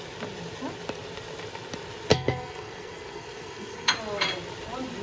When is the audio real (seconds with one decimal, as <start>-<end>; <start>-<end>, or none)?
0.0-2.1; 3.9-5.0